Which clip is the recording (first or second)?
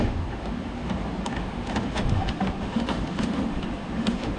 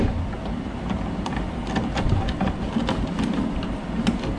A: second